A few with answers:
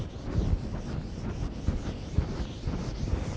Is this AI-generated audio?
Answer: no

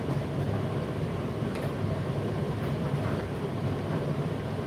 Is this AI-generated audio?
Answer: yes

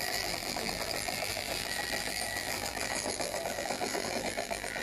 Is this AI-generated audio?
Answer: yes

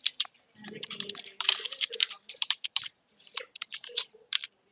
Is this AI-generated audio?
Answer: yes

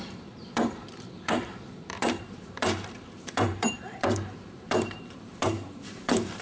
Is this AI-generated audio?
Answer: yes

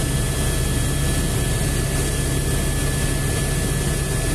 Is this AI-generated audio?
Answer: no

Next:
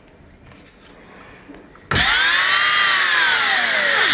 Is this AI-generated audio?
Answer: no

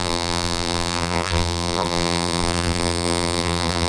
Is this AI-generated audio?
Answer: yes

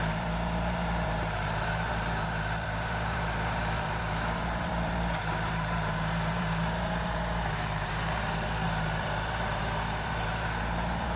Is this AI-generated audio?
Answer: yes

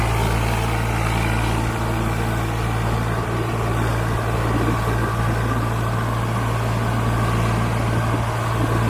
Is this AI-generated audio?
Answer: no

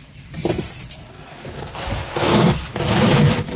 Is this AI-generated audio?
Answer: yes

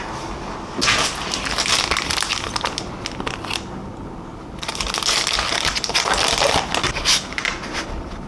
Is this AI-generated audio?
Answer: no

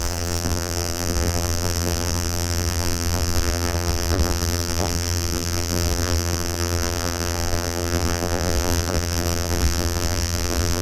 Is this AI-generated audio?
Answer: yes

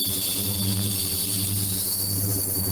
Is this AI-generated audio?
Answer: yes